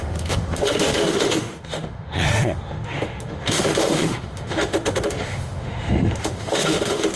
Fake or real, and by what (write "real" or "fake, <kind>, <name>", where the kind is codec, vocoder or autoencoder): fake, autoencoder, DAC-VAE